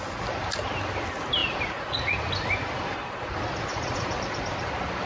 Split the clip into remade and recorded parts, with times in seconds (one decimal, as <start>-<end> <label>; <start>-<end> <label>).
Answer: 0.0-1.4 recorded; 1.4-2.3 remade; 2.3-3.7 recorded; 3.7-4.2 remade; 4.2-5.1 recorded